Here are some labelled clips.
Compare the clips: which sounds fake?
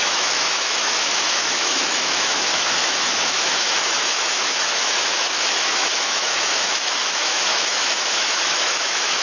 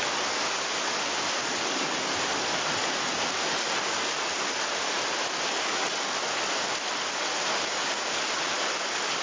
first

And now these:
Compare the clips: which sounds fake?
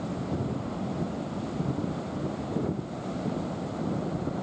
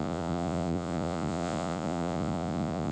second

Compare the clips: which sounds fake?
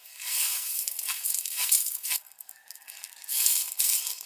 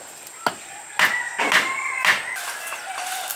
first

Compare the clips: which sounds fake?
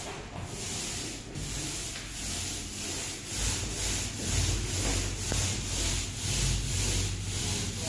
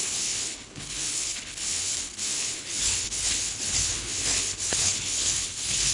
second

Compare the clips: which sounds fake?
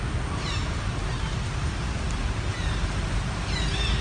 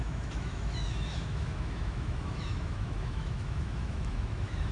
second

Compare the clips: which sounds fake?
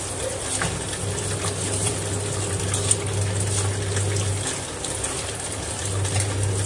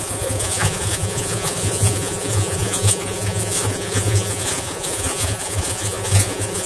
second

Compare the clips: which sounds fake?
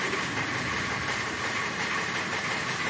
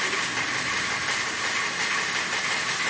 first